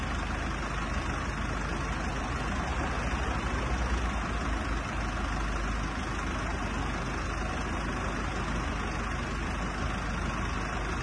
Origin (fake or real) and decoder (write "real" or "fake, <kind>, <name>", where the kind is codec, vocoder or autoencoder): real